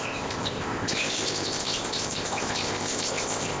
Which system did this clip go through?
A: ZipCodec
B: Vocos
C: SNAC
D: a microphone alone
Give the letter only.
A